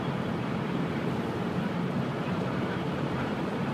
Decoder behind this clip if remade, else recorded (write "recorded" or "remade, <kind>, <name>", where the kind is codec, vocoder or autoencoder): remade, vocoder, BigVGAN v2